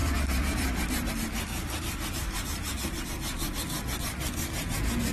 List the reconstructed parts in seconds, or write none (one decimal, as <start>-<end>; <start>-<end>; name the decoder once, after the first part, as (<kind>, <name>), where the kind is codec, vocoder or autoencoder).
0.0-1.1 (vocoder, BigVGAN v2); 1.5-3.0